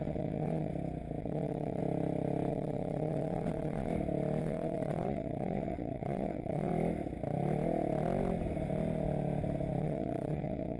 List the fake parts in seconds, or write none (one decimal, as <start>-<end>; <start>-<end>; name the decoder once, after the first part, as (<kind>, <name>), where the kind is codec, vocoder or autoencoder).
0.0-0.7 (vocoder, WaveNeXt); 1.2-1.8; 2.5-3.9; 4.4-6.7; 9.8-10.8